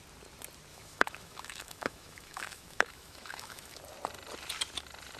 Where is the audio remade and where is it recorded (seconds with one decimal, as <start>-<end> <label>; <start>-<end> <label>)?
0.0-0.7 recorded; 0.7-3.8 remade; 3.8-5.2 recorded